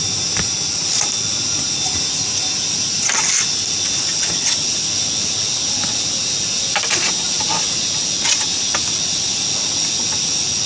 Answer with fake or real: real